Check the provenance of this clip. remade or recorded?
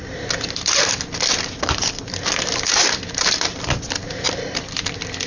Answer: remade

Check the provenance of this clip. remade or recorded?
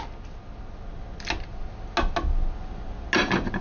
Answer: recorded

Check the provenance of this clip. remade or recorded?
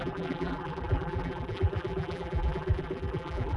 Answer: remade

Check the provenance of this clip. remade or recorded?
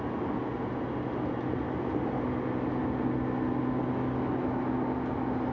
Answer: recorded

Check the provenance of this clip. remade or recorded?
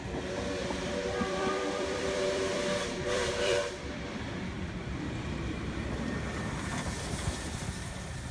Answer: remade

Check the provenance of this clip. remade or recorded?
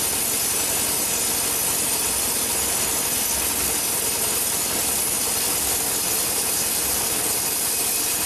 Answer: recorded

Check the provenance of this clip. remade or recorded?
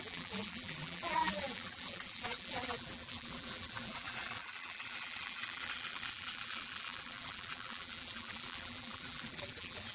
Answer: remade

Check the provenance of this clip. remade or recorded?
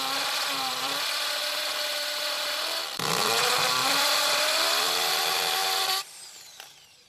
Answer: remade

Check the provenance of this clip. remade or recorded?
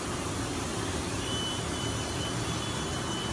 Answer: remade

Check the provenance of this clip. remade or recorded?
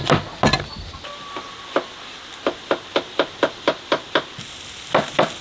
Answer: remade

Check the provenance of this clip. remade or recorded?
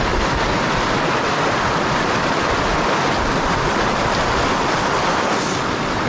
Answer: recorded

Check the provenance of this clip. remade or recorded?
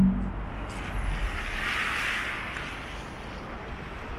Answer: recorded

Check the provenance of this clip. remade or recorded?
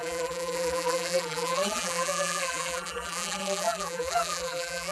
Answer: remade